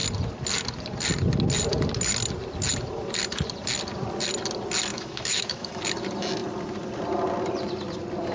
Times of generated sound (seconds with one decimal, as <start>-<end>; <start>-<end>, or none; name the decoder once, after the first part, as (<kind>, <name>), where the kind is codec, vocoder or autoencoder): 4.9-5.8 (autoencoder, DAC-VAE)